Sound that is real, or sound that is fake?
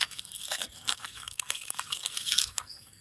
fake